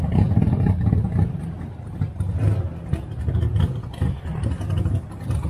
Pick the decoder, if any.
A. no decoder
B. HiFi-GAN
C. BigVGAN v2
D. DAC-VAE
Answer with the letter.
A